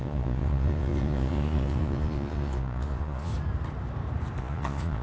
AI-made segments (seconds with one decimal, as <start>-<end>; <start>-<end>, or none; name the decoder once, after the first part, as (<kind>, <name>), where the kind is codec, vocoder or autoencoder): 0.0-3.3 (vocoder, Vocos); 4.4-5.0

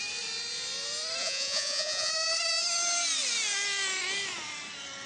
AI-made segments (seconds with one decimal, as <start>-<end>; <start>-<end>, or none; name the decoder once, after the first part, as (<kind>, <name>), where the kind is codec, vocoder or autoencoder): 1.2-2.1 (vocoder, Vocos)

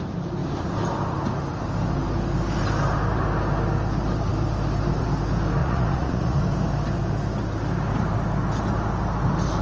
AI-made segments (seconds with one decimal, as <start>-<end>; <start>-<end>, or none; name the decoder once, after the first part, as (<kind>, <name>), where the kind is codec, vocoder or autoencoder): 5.6-6.4 (vocoder, Vocos)

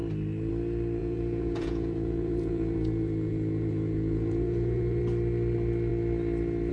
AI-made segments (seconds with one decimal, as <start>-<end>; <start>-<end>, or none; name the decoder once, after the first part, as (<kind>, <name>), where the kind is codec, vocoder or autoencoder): 1.0-5.0 (vocoder, Vocos)

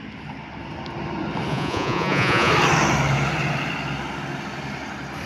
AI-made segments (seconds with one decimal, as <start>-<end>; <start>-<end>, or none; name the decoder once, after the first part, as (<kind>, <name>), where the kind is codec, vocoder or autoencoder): 1.5-2.5 (vocoder, Vocos)

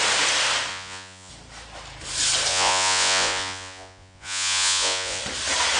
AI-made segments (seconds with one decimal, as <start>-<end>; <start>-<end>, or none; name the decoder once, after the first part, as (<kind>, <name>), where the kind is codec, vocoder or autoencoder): 0.7-1.3 (vocoder, Vocos); 2.5-5.2

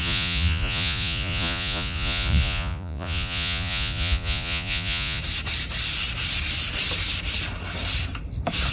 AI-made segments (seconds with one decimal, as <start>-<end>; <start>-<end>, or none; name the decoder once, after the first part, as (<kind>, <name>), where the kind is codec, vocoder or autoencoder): 0.0-5.2 (vocoder, Vocos)

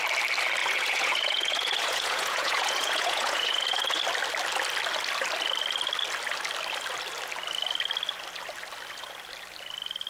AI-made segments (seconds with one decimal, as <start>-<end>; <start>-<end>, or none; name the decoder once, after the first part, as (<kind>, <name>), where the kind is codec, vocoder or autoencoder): 0.6-4.0 (vocoder, Vocos)